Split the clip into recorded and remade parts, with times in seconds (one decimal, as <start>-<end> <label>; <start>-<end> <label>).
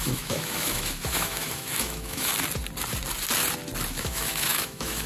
0.0-2.3 remade; 2.3-3.9 recorded; 3.9-5.1 remade